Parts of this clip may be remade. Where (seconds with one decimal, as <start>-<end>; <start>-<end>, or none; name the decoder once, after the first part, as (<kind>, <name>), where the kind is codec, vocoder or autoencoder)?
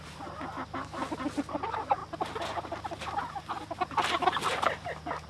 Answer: none